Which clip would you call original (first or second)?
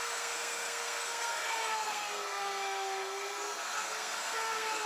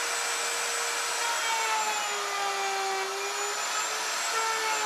second